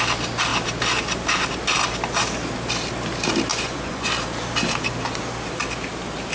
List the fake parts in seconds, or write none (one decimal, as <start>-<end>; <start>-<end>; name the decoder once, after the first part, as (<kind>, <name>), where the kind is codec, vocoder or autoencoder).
3.5-4.1 (vocoder, Vocos)